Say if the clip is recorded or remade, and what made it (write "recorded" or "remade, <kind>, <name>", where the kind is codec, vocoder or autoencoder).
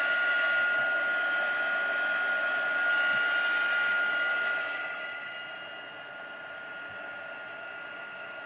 recorded